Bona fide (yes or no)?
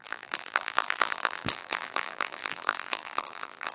no